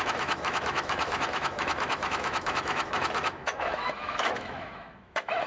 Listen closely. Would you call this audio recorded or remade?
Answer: remade